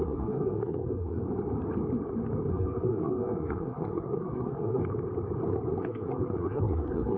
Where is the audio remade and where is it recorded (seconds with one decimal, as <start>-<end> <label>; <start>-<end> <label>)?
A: 0.0-1.2 remade; 1.2-2.5 recorded; 2.5-4.8 remade; 4.8-5.8 recorded; 5.8-7.2 remade